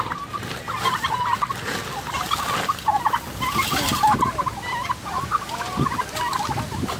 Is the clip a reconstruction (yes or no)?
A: no